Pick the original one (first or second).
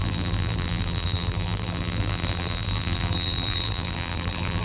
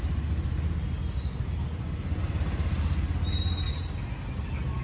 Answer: second